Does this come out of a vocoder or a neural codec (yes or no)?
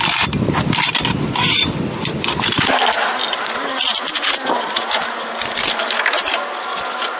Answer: no